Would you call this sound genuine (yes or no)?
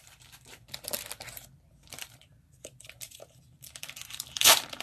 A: no